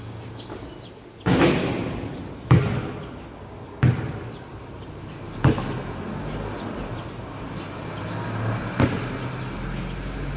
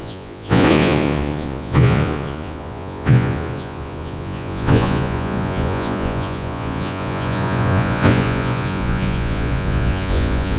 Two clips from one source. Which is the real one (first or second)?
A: first